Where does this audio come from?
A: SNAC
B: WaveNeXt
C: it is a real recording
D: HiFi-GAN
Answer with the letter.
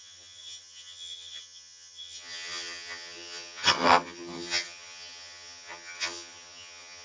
D